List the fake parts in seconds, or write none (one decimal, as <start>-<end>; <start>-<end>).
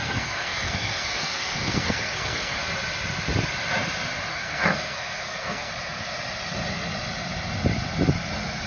0.0-2.6; 4.3-5.7